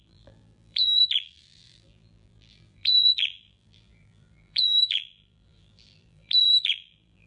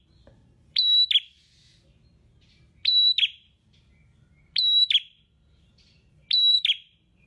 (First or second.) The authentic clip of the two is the second